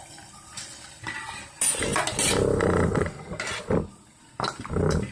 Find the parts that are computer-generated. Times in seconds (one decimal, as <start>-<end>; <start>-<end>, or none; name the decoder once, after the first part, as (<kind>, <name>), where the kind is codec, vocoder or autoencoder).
none